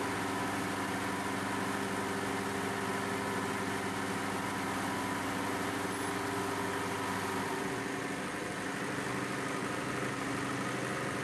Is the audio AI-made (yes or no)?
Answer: no